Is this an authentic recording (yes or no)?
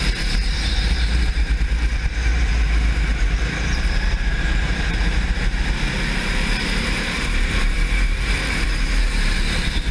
no